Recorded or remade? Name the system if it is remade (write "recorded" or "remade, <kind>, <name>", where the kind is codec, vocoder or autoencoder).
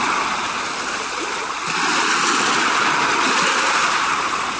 recorded